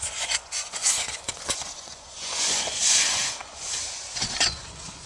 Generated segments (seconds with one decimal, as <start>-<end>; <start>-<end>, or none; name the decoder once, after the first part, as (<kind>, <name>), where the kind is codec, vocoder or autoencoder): 0.0-5.1 (vocoder, Vocos)

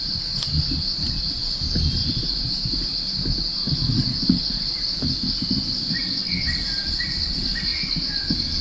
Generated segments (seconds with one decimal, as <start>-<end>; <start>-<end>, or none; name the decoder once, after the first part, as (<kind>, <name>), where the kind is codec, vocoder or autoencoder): none

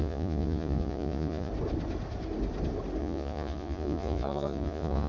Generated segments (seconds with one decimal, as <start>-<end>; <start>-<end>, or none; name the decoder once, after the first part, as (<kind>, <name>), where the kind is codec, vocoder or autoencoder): 0.0-1.5 (vocoder, Vocos); 3.0-5.1

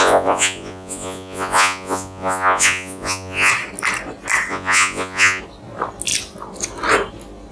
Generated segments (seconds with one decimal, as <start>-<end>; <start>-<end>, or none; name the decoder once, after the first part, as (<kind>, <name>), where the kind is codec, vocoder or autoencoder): 0.0-3.5 (vocoder, Vocos); 4.5-5.4

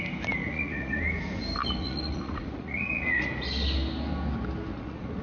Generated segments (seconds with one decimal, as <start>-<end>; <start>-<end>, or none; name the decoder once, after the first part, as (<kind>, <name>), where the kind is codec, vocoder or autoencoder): 0.4-1.0 (vocoder, Vocos); 1.6-3.3; 4.7-5.2

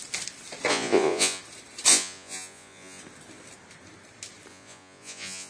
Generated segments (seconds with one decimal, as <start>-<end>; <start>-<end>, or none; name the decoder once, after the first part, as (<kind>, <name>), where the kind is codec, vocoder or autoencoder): 0.7-1.4 (vocoder, Vocos); 1.9-3.0; 4.5-5.5